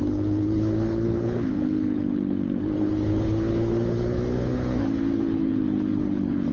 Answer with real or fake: fake